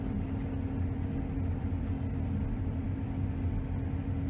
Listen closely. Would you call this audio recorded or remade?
recorded